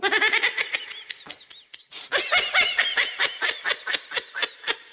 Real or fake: fake